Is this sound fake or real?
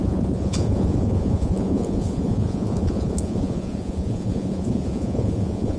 fake